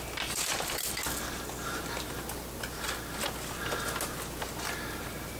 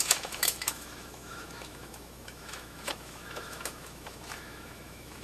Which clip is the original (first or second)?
first